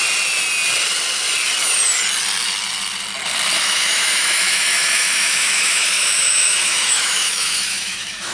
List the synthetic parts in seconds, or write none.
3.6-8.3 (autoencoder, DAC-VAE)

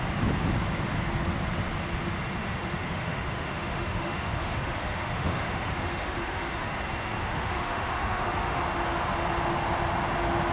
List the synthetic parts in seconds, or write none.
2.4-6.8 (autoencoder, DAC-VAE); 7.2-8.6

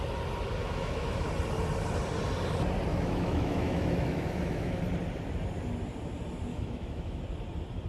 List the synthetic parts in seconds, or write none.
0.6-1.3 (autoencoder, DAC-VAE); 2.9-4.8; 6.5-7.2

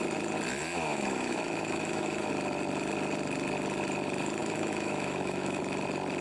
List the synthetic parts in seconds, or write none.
0.7-2.3 (autoencoder, DAC-VAE); 4.4-5.6

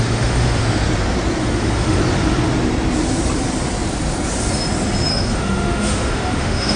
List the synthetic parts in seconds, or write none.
0.0-0.6 (autoencoder, DAC-VAE); 1.4-2.0; 5.1-6.8

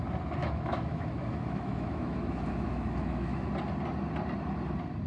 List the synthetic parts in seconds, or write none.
0.4-3.5 (autoencoder, DAC-VAE)

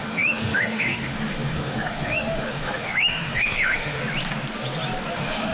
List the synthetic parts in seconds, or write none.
0.0-4.0 (autoencoder, DAC-VAE); 5.1-5.5